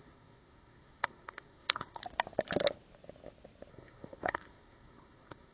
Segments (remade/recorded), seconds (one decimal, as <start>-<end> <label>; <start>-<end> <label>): 0.0-2.0 remade; 2.0-3.7 recorded; 3.7-5.5 remade